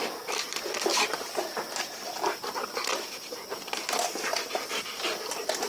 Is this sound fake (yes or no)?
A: no